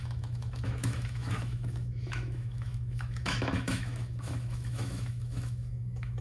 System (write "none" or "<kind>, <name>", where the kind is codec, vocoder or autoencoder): autoencoder, DAC-VAE